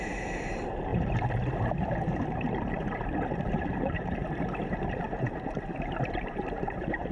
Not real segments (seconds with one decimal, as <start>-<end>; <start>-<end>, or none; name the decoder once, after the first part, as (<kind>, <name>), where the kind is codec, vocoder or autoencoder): 0.0-7.1 (vocoder, BigVGAN v2)